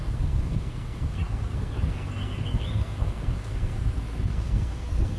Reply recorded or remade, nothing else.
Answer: remade